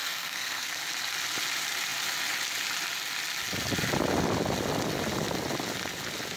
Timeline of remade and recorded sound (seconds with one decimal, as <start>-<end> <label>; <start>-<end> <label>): 0.0-0.8 remade; 0.8-6.4 recorded

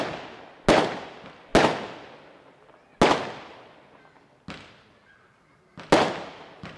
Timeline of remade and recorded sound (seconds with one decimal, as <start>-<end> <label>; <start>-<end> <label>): 0.0-6.8 recorded